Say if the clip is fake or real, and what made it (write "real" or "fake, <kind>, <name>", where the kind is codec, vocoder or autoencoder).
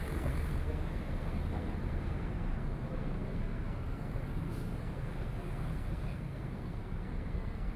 fake, codec, SNAC